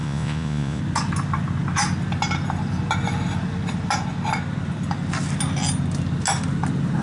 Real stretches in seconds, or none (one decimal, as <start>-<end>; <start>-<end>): 0.8-7.0